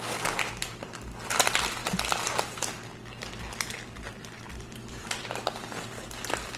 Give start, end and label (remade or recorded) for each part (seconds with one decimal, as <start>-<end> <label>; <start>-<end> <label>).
0.0-4.5 recorded; 4.5-5.2 remade; 5.2-6.6 recorded